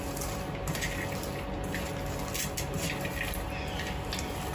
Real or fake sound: real